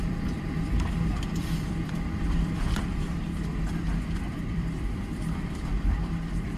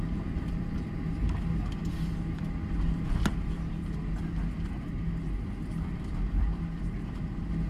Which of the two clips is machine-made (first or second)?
first